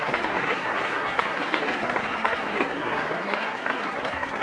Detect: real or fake fake